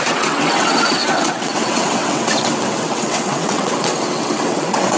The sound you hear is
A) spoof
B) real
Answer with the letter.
A